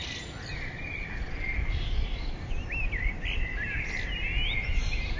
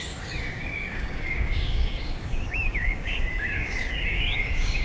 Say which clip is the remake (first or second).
second